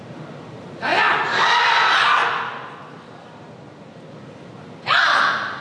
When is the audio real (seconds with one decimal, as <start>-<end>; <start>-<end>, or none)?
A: 0.0-5.6